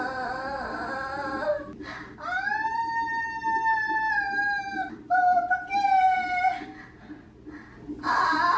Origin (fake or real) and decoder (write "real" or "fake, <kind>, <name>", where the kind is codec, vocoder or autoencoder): real